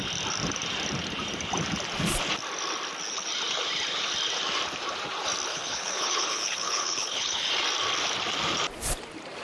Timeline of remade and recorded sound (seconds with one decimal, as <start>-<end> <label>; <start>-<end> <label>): 0.0-5.5 recorded; 5.5-7.5 remade; 7.5-9.4 recorded